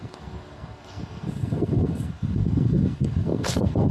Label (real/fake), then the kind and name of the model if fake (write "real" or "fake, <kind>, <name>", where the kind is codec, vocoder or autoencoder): fake, codec, SNAC